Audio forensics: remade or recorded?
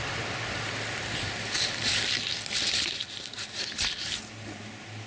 recorded